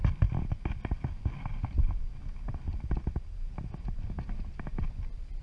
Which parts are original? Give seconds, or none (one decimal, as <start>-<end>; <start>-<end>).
0.0-5.4